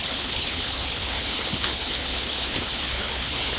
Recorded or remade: remade